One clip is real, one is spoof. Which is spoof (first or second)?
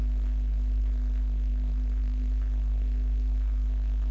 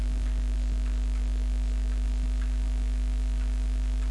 first